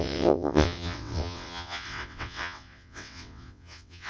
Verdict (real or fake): fake